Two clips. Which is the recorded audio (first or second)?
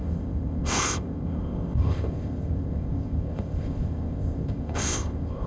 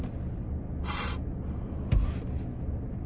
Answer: second